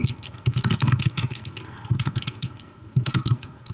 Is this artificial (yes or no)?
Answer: yes